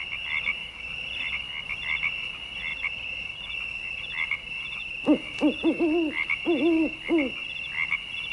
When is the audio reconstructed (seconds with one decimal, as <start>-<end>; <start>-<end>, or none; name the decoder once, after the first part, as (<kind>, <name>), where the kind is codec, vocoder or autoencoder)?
0.6-1.3 (vocoder, BigVGAN v2); 2.7-3.4